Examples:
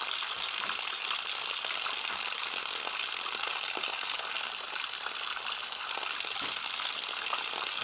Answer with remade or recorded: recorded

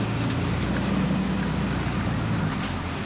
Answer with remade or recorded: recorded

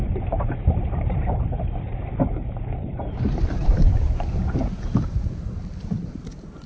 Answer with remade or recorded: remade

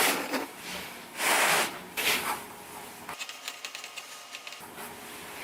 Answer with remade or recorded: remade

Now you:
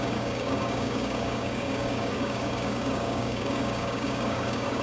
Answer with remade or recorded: remade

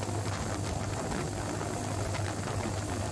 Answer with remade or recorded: recorded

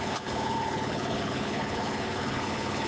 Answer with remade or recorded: remade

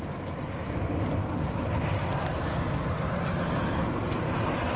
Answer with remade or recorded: recorded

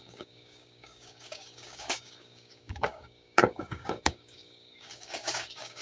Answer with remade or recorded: remade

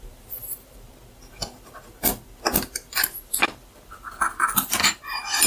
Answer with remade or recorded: recorded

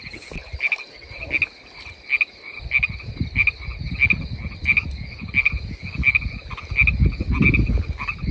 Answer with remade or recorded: recorded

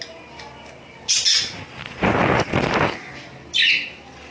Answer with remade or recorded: recorded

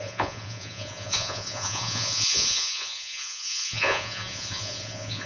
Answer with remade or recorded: remade